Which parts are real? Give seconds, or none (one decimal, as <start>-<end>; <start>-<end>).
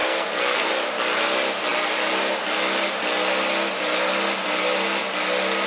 0.7-5.7